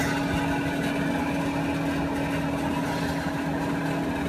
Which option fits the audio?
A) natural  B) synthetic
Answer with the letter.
A